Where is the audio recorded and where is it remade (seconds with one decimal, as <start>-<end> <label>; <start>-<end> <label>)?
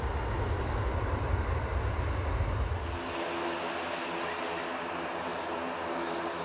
0.0-6.4 recorded